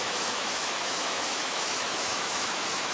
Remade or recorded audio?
remade